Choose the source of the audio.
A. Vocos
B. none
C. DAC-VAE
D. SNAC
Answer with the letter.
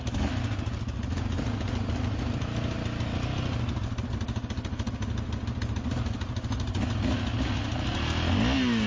B